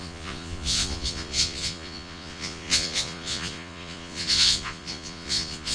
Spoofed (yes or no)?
yes